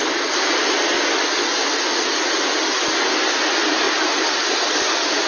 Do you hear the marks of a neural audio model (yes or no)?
no